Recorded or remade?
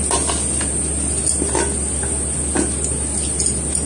recorded